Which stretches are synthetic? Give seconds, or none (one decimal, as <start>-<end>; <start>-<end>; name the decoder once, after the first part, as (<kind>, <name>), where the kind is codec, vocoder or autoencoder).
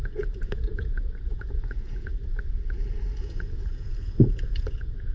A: 0.0-2.1 (vocoder, Vocos); 3.2-5.1